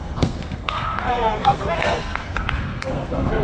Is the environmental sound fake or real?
fake